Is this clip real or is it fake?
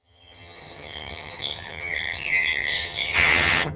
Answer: fake